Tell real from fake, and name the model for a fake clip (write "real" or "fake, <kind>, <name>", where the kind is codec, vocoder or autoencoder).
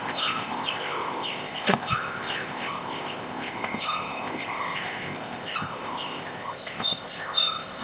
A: fake, codec, ZipCodec